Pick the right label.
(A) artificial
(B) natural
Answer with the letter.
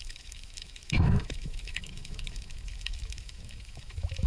A